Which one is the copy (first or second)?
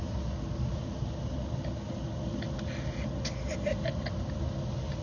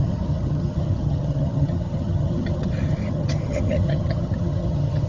second